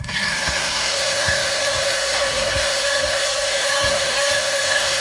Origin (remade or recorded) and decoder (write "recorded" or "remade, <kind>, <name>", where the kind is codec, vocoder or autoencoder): remade, codec, SNAC